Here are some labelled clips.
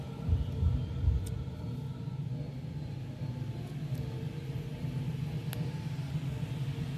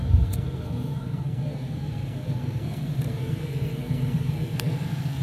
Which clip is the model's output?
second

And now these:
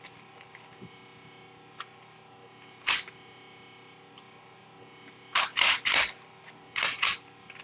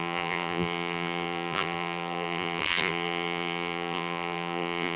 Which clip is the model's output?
second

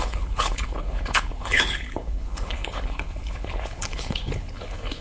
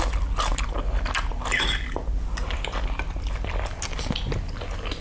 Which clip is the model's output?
first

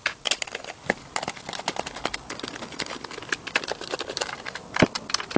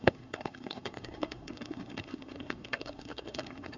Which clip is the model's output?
second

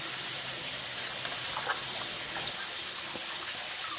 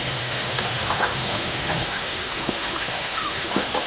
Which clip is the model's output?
second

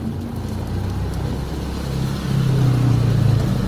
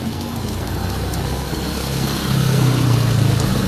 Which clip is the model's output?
second